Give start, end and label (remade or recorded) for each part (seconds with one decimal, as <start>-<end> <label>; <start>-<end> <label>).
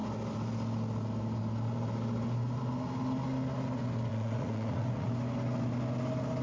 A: 0.0-4.1 recorded; 4.1-5.1 remade; 5.1-6.4 recorded